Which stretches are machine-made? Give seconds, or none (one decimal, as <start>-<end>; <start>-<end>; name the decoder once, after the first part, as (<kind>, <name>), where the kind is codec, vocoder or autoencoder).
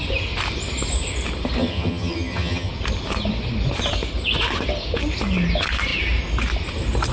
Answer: 1.6-2.7 (vocoder, HiFi-GAN)